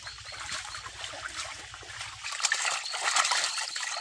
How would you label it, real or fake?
real